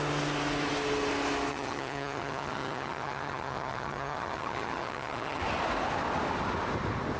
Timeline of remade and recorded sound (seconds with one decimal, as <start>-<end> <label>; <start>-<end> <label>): 0.0-1.5 recorded; 1.5-5.4 remade; 5.4-7.2 recorded